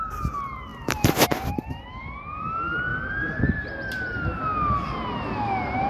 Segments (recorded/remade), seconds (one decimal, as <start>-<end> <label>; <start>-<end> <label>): 0.0-0.7 recorded; 0.7-2.2 remade; 2.2-2.9 recorded; 2.9-3.4 remade; 3.4-5.9 recorded